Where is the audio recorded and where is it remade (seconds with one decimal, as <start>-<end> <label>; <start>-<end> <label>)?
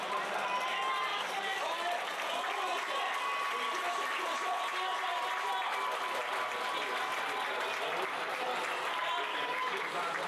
0.0-1.1 recorded; 1.1-1.6 remade; 1.6-9.3 recorded; 9.3-9.8 remade; 9.8-10.3 recorded